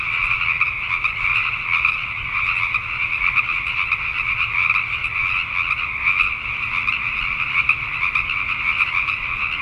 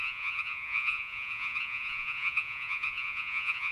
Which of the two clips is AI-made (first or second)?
second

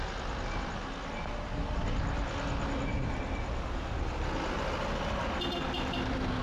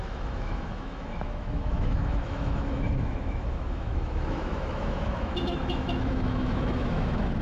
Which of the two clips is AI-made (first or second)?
second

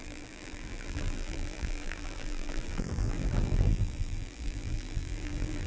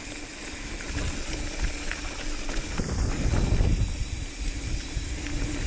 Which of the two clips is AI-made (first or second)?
first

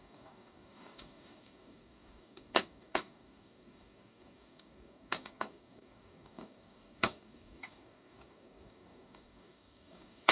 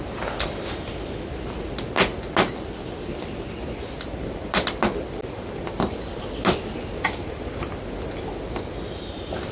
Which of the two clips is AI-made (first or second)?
first